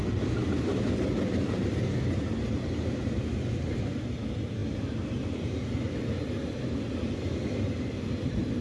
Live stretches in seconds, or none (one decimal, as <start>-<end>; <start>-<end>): 0.0-8.6